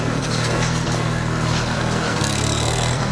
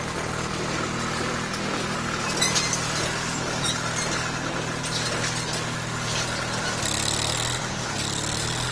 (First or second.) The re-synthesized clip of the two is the first